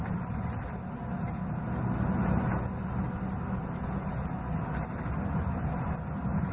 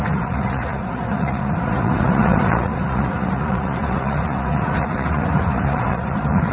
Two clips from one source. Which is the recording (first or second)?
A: first